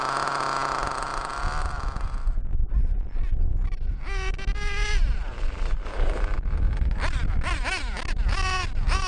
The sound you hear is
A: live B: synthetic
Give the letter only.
A